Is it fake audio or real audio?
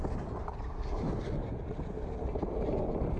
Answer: real